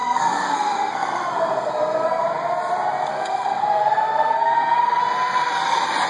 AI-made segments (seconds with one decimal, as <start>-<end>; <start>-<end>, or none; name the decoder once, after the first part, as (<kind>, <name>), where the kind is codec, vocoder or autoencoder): 0.0-2.2 (codec, SNAC); 3.1-5.0